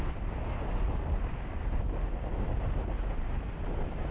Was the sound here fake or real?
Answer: real